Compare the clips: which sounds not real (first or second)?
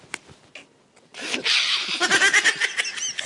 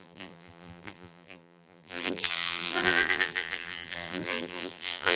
second